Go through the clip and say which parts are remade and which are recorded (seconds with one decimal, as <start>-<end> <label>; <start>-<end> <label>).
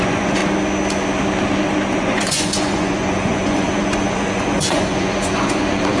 0.0-0.4 remade; 0.4-2.0 recorded; 2.0-6.0 remade